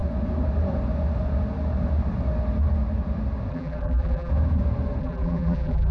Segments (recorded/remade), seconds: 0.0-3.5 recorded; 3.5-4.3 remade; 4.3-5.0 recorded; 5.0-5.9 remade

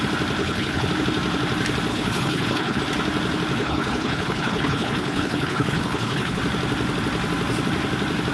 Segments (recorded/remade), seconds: 0.0-0.4 recorded; 0.4-0.9 remade; 0.9-1.9 recorded; 1.9-2.8 remade; 2.8-3.6 recorded; 3.6-6.4 remade; 6.4-8.3 recorded

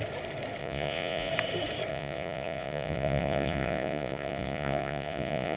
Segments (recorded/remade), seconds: 0.0-0.6 recorded; 0.6-1.3 remade; 1.3-1.9 recorded; 1.9-5.6 remade

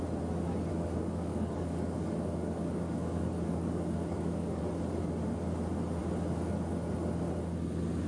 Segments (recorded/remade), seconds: 0.0-0.7 recorded; 0.7-4.6 remade; 4.6-8.1 recorded